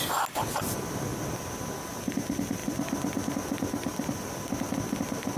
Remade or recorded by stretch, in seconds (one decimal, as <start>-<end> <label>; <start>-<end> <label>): 0.0-5.4 recorded